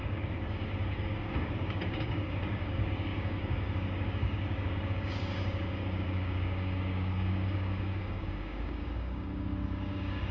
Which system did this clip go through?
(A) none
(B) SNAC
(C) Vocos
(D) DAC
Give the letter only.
D